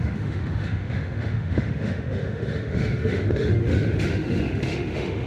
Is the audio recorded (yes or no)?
no